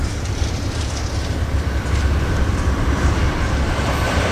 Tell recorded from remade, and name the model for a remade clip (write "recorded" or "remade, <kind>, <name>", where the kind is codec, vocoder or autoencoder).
remade, vocoder, BigVGAN v2